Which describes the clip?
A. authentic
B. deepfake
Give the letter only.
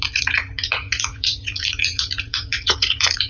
B